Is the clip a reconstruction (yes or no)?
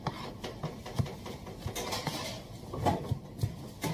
no